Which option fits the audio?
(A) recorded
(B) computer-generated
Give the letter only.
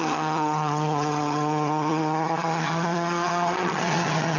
B